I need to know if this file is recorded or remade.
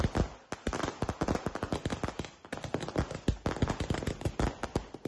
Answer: recorded